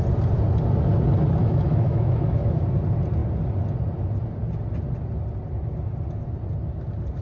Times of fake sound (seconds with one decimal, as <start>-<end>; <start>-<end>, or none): 1.4-2.6